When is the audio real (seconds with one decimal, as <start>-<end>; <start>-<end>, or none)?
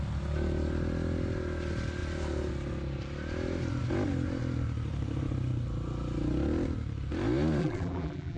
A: 0.0-7.6